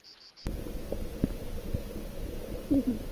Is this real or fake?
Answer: real